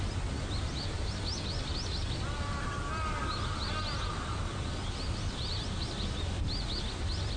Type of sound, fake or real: real